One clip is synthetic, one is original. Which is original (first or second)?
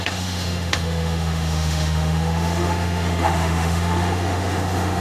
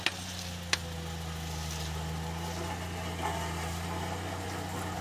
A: second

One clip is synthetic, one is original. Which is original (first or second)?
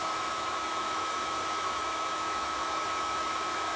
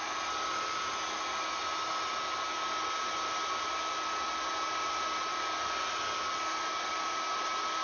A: second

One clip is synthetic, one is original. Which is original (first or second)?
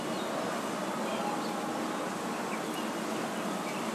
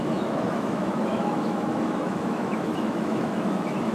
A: first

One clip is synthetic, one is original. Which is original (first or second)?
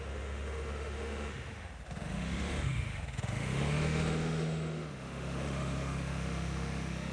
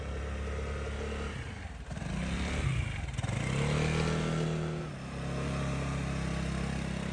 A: second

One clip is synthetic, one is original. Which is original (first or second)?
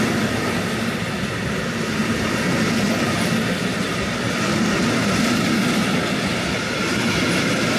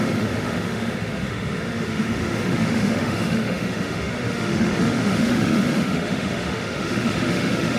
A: first